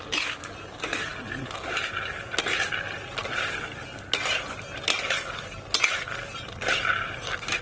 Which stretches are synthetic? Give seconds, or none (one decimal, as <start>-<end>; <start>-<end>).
none